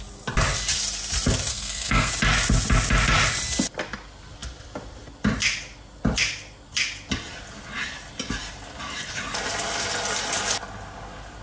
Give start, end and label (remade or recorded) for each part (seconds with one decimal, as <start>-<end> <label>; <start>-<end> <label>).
0.0-1.5 recorded; 1.5-2.1 remade; 2.1-11.4 recorded